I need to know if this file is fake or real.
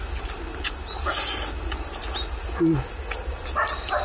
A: real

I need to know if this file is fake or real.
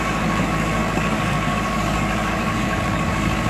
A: fake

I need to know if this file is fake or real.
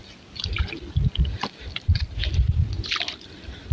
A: real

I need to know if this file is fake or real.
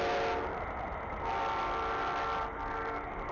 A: real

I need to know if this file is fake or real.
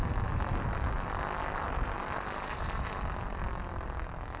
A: real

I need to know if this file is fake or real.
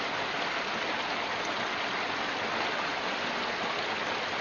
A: real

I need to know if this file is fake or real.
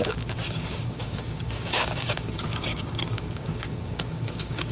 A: fake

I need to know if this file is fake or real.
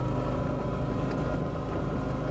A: real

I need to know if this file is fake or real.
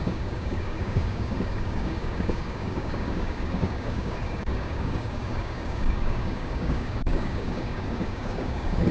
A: fake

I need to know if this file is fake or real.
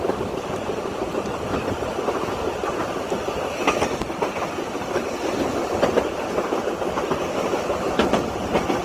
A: real